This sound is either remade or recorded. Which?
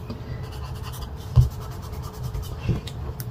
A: recorded